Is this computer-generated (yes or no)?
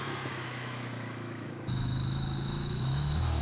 yes